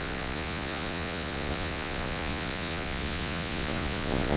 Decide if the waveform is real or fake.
fake